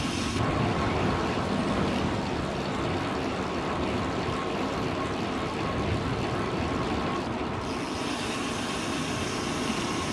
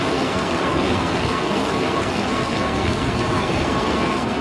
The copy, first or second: second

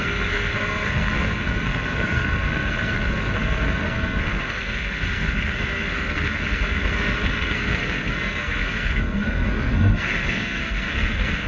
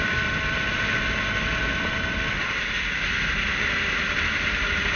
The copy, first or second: first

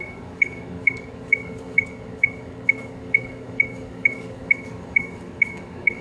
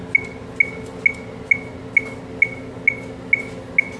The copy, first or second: first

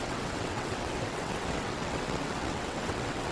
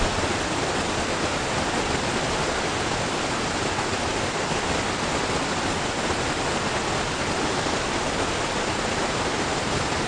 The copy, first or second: first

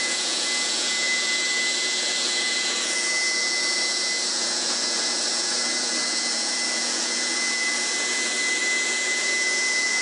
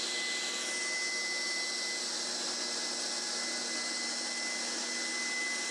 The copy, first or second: first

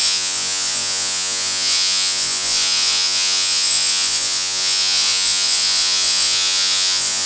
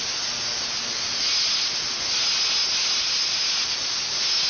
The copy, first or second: first